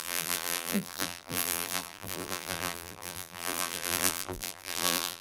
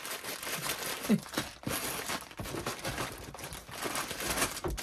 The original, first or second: second